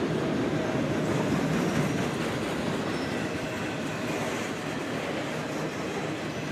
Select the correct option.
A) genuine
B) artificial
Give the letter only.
A